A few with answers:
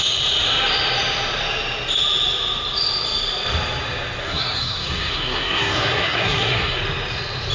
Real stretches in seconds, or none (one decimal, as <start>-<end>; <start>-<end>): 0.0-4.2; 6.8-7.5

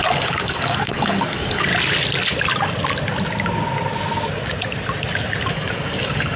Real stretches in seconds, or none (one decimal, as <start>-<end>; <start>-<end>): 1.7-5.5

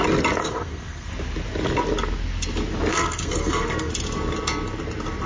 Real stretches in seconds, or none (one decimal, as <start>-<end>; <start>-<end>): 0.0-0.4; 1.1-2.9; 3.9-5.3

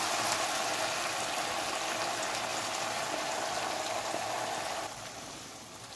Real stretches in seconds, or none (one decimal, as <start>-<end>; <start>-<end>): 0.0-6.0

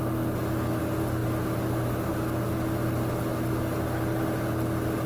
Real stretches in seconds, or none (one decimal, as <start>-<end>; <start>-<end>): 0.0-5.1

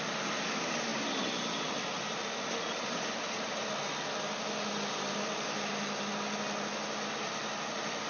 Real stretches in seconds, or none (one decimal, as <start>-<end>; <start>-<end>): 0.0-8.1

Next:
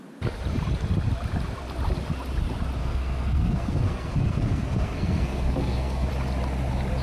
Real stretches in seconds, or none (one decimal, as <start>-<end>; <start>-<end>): 0.0-2.8; 6.1-7.0

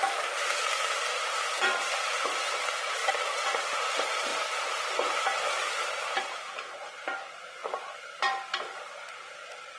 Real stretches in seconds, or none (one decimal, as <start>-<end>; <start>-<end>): 3.0-3.6; 4.3-6.1